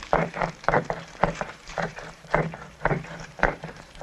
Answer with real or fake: fake